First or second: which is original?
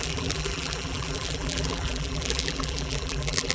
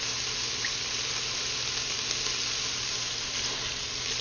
second